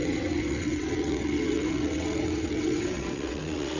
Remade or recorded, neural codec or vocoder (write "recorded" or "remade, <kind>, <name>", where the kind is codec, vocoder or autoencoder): remade, vocoder, WaveNeXt